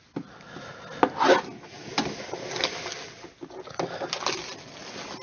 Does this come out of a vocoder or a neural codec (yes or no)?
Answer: no